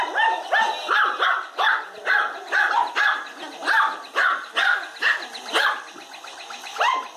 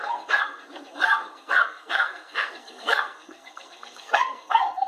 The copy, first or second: second